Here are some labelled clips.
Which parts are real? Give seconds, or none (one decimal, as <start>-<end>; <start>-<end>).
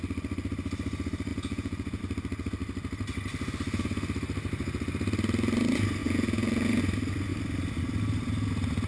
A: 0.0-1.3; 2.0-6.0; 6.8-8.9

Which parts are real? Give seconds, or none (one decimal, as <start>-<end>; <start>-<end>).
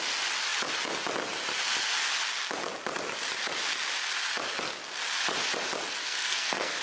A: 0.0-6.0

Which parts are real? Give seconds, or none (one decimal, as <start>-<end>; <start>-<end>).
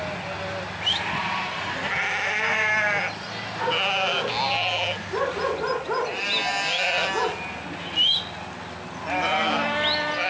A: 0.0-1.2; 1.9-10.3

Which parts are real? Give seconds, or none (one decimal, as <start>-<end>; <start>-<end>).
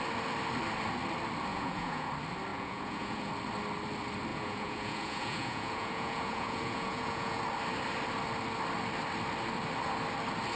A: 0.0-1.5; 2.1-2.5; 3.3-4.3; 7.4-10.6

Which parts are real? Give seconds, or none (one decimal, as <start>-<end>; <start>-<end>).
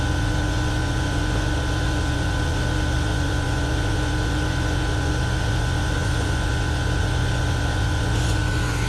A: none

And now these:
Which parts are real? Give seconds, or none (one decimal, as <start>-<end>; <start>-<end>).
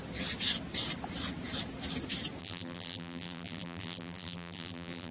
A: 0.0-2.4